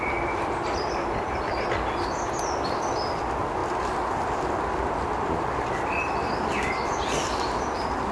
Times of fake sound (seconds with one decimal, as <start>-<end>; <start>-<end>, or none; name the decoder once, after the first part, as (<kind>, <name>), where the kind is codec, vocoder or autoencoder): none